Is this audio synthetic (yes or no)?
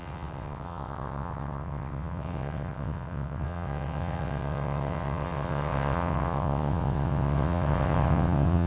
yes